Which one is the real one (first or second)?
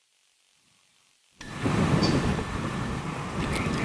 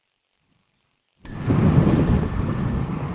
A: first